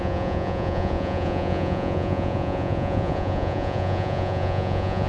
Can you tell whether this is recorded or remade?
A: remade